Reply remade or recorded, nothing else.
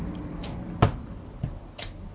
remade